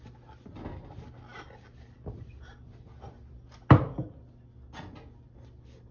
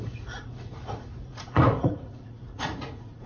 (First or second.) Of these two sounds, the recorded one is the first